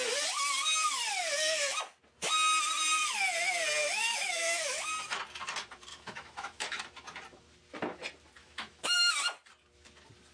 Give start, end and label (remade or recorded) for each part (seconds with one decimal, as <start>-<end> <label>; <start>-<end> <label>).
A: 0.0-3.8 recorded; 3.8-4.9 remade; 4.9-5.9 recorded; 5.9-6.8 remade; 6.8-8.4 recorded; 8.4-9.1 remade; 9.1-10.3 recorded